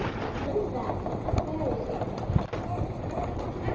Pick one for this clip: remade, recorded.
recorded